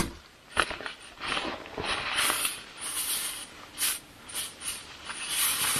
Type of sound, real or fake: real